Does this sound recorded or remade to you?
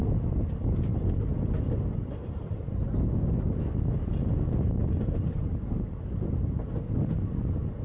recorded